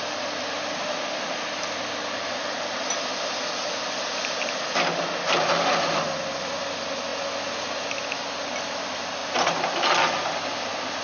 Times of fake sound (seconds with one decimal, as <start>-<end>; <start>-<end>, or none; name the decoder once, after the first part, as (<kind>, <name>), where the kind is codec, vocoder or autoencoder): none

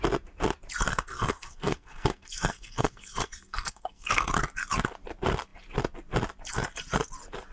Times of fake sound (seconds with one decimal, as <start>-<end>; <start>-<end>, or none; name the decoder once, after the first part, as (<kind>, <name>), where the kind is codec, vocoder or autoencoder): 0.9-4.3 (codec, SNAC)

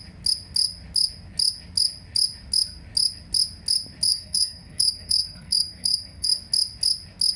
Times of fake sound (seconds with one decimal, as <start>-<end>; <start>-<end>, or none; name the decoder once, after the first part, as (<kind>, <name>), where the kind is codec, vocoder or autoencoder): 4.1-6.4 (codec, SNAC)

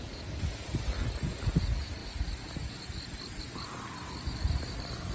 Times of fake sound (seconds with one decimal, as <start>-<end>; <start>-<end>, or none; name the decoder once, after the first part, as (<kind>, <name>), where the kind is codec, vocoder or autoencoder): none

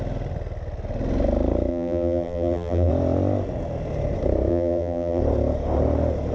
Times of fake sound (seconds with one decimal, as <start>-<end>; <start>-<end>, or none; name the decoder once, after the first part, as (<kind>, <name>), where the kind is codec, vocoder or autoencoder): 1.7-2.9 (vocoder, BigVGAN v2); 4.5-5.2

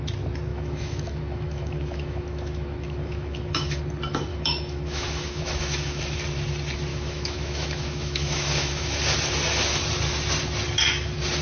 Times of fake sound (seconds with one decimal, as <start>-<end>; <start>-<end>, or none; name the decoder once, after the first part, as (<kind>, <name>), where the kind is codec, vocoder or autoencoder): 0.5-3.8 (autoencoder, DAC-VAE); 4.3-6.0; 6.9-9.0

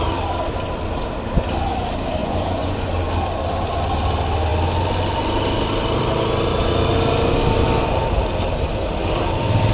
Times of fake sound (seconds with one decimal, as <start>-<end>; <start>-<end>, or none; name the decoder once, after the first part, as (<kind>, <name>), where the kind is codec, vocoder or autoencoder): 2.2-2.9 (vocoder, Vocos)

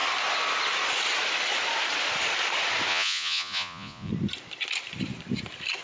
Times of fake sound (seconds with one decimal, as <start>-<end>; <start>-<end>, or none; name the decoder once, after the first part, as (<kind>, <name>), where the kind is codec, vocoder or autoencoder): 2.9-4.1 (vocoder, Vocos)